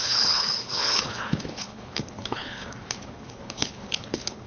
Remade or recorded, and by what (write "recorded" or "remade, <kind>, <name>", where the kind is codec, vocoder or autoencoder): remade, codec, HILCodec